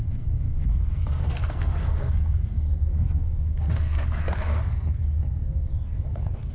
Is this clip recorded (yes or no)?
no